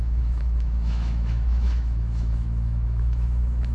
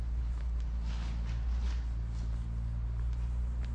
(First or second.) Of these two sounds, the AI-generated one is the first